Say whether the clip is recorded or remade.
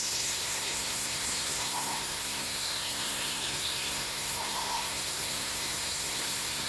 remade